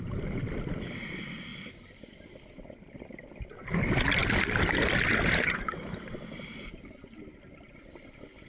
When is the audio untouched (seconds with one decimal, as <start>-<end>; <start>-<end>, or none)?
0.0-8.5